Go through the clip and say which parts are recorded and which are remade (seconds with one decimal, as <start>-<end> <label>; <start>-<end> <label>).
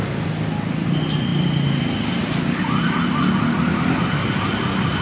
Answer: 0.0-1.3 recorded; 1.3-1.8 remade; 1.8-5.0 recorded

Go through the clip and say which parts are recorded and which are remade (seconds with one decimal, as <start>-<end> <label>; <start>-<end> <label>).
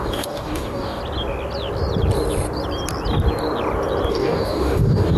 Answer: 0.0-1.0 remade; 1.0-4.1 recorded; 4.1-5.2 remade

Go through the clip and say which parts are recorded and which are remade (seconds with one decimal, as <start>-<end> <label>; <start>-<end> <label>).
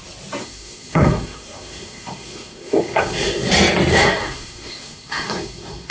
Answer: 0.0-0.4 recorded; 0.4-3.5 remade; 3.5-3.9 recorded; 3.9-5.9 remade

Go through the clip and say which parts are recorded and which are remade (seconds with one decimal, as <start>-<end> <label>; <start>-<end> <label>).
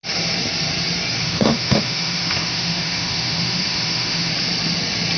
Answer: 0.0-1.2 recorded; 1.2-4.3 remade; 4.3-5.2 recorded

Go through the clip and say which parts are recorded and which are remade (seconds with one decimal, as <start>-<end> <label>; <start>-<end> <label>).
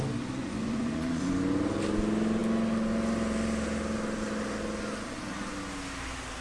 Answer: 0.0-0.4 recorded; 0.4-1.3 remade; 1.3-6.4 recorded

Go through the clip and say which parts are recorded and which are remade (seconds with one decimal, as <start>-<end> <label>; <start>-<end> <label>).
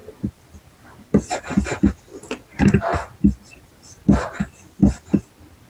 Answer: 0.0-5.7 recorded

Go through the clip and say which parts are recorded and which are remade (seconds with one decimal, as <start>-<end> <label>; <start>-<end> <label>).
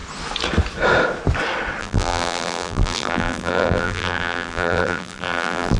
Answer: 0.0-1.8 recorded; 1.8-5.8 remade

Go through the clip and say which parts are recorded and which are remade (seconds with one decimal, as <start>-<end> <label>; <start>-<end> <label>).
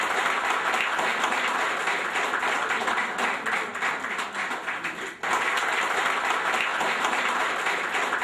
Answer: 0.0-6.7 recorded; 6.7-7.4 remade; 7.4-8.2 recorded